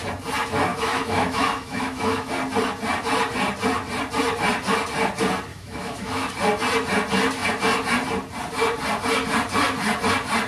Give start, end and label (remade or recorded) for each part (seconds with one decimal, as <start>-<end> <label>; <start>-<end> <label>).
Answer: 0.0-0.7 recorded; 0.7-2.3 remade; 2.3-5.5 recorded; 5.5-6.3 remade; 6.3-10.5 recorded